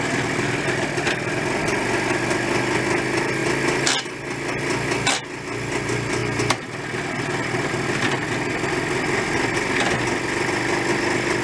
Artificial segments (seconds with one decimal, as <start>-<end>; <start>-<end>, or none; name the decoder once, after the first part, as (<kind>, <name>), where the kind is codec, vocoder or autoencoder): none